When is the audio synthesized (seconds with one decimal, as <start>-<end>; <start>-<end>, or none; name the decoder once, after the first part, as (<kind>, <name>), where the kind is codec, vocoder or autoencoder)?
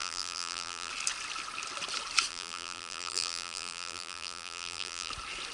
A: 0.0-0.9 (vocoder, BigVGAN v2); 2.3-5.1